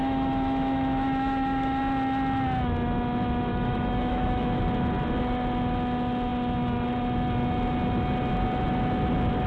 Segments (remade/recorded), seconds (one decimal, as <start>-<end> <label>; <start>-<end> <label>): 0.0-1.8 remade; 1.8-3.5 recorded; 3.5-4.6 remade; 4.6-9.5 recorded